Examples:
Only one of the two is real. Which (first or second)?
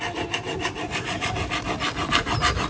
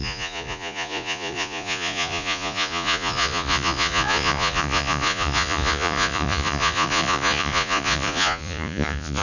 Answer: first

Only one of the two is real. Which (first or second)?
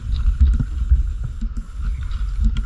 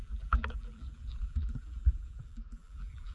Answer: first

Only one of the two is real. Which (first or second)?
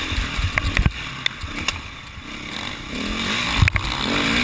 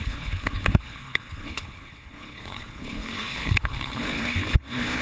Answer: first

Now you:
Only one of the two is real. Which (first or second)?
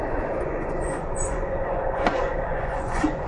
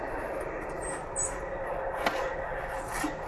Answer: second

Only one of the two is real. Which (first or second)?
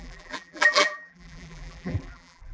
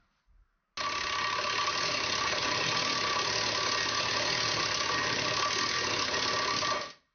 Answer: second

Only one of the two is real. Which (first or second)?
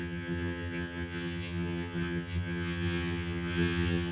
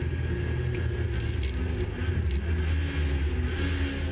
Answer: second